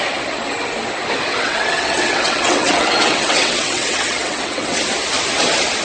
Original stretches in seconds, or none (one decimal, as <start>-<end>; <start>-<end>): 0.0-1.3; 4.8-5.8